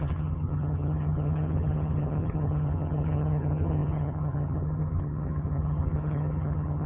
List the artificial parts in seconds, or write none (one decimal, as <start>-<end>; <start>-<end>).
0.0-6.9